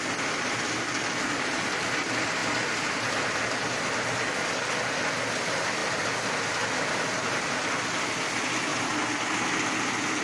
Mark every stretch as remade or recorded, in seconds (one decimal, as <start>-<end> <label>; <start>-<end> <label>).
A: 0.0-10.2 recorded